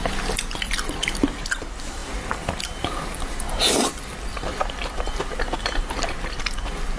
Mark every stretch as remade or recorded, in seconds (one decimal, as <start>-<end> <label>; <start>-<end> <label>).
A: 0.0-7.0 remade